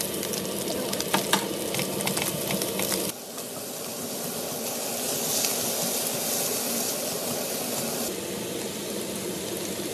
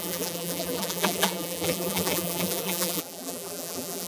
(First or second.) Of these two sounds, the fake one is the second